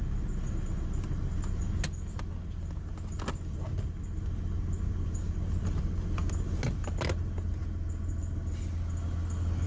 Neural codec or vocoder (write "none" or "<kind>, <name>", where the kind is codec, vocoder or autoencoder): none